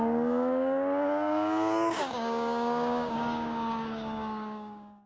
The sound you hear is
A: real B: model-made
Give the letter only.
B